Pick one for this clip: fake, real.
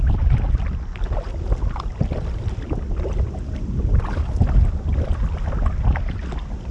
real